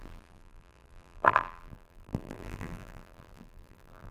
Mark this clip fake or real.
fake